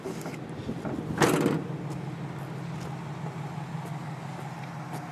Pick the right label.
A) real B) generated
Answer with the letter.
A